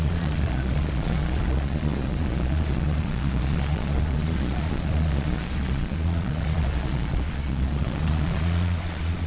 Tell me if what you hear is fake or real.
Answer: fake